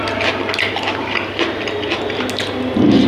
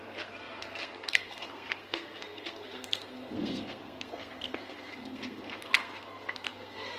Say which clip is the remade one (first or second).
second